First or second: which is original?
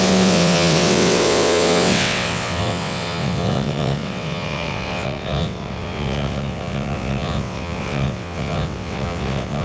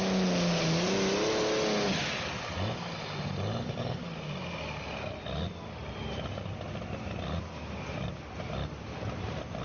second